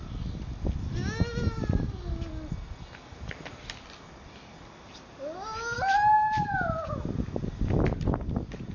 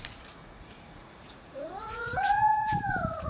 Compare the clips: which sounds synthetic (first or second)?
second